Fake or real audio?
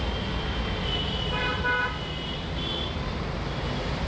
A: real